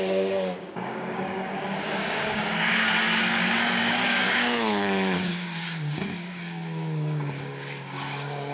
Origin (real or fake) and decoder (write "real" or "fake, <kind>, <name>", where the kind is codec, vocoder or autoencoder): fake, codec, DAC